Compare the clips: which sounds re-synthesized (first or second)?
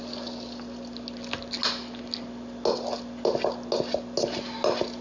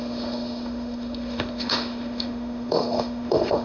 second